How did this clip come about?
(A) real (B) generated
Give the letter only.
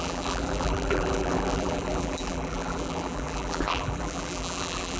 B